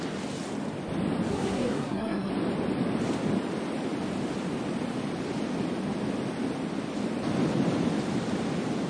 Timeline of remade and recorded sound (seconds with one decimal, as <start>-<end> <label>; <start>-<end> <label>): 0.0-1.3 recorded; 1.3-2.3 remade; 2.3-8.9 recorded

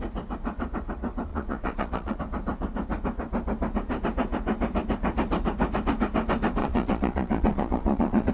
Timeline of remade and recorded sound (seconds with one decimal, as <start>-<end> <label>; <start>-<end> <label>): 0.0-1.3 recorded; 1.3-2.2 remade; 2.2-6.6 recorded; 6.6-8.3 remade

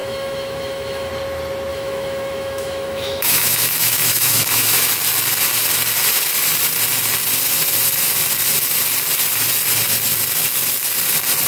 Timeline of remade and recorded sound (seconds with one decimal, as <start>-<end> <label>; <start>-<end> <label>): 0.0-1.1 remade; 1.1-1.7 recorded; 1.7-4.9 remade; 4.9-11.5 recorded

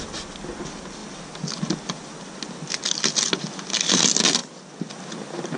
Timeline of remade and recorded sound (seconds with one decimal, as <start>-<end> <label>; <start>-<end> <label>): 0.0-5.6 recorded

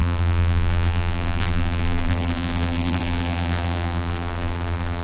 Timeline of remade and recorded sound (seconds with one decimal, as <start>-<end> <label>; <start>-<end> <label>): 0.0-5.0 remade

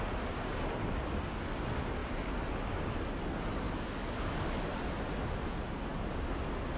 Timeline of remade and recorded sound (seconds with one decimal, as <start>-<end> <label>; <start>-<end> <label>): 0.0-6.8 recorded